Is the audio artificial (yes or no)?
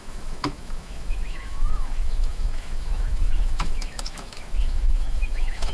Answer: yes